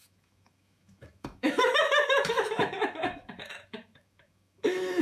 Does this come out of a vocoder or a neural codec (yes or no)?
yes